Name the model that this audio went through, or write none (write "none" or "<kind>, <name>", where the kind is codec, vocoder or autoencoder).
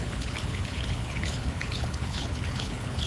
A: codec, HILCodec